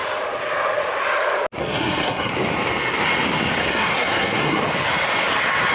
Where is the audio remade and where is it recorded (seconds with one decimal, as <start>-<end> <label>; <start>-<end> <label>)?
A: 0.0-1.6 recorded; 1.6-2.3 remade; 2.3-3.6 recorded; 3.6-4.6 remade; 4.6-5.7 recorded